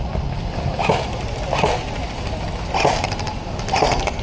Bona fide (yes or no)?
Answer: yes